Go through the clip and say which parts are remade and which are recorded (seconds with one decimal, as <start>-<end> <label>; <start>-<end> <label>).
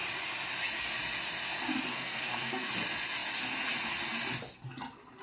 0.0-1.9 recorded; 1.9-2.7 remade; 2.7-5.2 recorded